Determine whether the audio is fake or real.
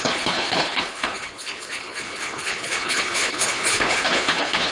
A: fake